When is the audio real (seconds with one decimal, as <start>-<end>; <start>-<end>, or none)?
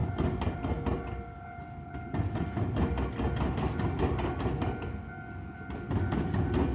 0.0-6.7